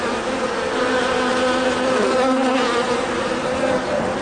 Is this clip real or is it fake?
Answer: real